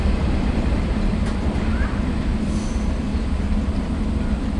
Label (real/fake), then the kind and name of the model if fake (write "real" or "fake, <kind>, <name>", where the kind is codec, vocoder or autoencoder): real